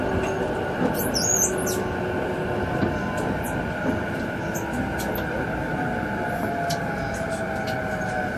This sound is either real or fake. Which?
real